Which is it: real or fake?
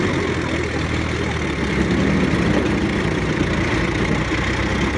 real